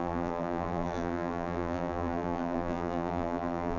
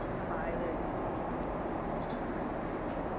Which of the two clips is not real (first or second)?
first